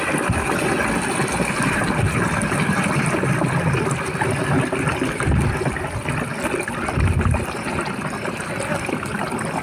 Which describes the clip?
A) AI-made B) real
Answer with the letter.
B